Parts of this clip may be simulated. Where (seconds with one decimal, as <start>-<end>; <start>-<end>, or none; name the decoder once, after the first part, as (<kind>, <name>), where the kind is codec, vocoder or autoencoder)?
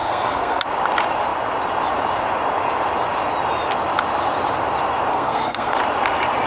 0.0-0.6 (codec, SNAC); 5.1-5.8